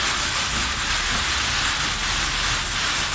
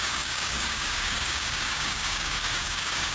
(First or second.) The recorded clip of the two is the first